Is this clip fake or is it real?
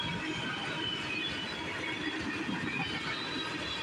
real